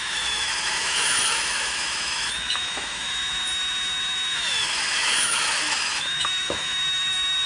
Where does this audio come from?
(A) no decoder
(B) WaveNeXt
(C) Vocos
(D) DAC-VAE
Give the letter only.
D